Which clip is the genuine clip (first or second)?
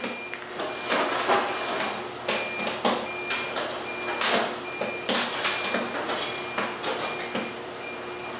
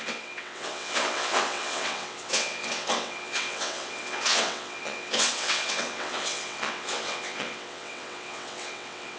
first